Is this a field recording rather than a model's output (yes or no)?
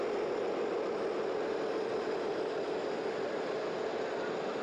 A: yes